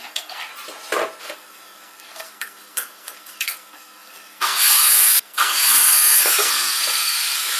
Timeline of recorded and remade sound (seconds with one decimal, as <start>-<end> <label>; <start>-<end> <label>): 0.0-0.5 remade; 0.5-1.2 recorded; 1.2-7.6 remade